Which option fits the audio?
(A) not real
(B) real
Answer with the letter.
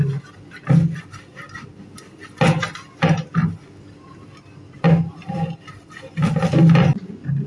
B